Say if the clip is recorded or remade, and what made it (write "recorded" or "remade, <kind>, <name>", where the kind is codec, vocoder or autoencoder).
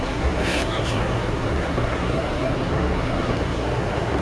remade, codec, SNAC